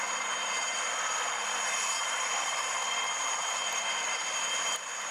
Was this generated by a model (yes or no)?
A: no